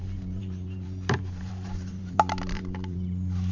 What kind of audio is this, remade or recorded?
remade